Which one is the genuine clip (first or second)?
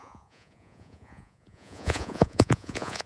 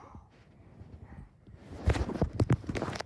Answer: second